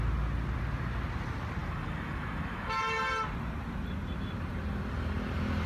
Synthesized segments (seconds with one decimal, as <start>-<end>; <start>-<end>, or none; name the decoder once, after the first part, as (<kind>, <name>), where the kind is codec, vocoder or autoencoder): 1.6-2.8 (autoencoder, DAC-VAE)